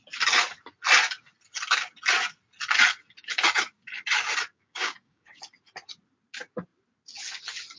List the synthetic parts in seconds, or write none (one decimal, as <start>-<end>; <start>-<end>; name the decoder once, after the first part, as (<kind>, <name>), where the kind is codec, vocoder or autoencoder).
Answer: 4.5-5.4 (codec, DAC)